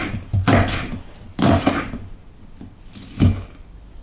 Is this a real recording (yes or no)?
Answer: yes